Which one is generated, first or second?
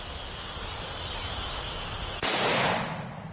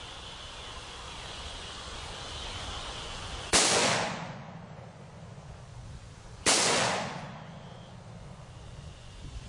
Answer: second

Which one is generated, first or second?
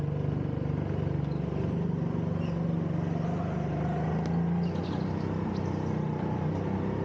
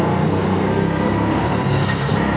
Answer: second